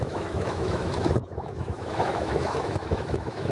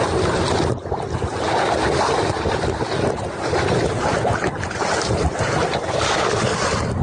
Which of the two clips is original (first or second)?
second